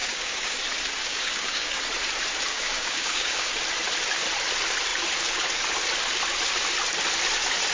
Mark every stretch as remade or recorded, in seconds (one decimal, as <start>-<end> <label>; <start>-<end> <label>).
0.0-0.6 remade; 0.6-1.0 recorded; 1.0-1.8 remade; 1.8-2.5 recorded; 2.5-3.5 remade; 3.5-7.7 recorded